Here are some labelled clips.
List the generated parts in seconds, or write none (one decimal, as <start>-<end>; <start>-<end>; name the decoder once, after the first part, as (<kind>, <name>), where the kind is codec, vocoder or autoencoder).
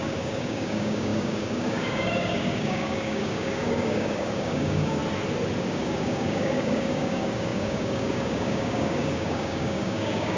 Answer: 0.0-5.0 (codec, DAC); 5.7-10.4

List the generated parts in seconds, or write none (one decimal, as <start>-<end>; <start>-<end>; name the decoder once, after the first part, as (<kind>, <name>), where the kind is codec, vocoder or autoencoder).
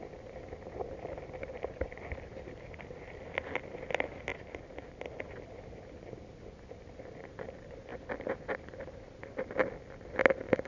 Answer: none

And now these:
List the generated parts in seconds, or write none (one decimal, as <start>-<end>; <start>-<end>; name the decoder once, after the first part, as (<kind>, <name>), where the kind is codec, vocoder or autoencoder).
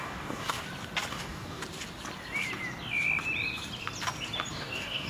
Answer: 0.0-0.6 (codec, DAC); 1.1-1.6; 4.5-5.1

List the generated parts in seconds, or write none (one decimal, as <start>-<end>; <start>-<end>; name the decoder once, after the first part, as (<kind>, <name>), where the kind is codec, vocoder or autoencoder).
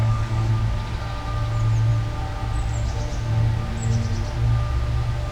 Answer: 0.0-0.5 (codec, DAC)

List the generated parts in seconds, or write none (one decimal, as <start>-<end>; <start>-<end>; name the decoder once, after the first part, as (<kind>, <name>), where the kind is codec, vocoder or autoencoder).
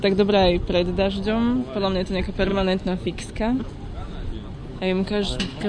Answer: 2.5-3.6 (codec, DAC); 4.6-5.7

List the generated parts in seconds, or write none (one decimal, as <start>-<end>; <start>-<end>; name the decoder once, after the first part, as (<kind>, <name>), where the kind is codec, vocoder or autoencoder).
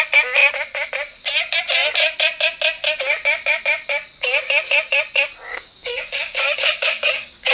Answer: 5.5-7.5 (codec, DAC)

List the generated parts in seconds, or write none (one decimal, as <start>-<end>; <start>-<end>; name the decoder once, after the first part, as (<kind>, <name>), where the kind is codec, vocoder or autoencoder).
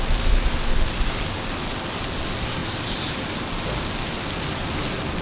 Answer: none